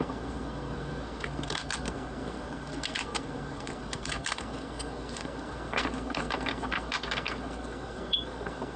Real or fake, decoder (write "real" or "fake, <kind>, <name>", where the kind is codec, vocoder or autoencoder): fake, codec, SNAC